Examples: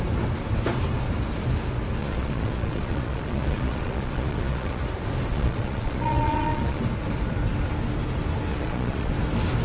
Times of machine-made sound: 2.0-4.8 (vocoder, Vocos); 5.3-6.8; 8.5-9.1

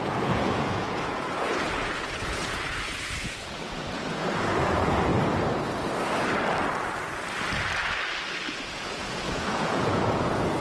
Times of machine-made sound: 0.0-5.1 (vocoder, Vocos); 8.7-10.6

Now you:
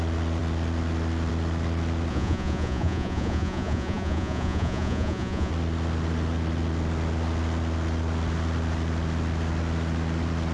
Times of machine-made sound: 2.1-5.5 (vocoder, Vocos)

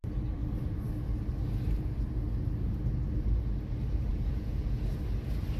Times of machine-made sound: 4.1-4.8 (vocoder, Vocos)

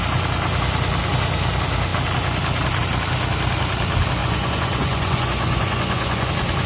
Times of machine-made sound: 4.2-6.3 (vocoder, Vocos)

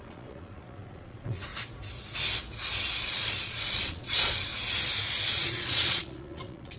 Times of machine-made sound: 0.0-1.5 (vocoder, Vocos); 3.0-4.5; 5.3-6.8